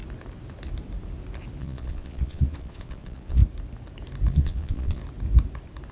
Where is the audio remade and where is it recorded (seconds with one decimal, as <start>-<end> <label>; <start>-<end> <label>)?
0.0-1.6 recorded; 1.6-3.4 remade; 3.4-4.3 recorded; 4.3-5.0 remade; 5.0-5.9 recorded